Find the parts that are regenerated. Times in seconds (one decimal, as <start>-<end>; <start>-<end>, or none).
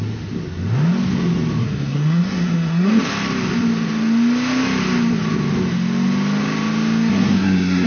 1.6-3.0; 7.1-7.9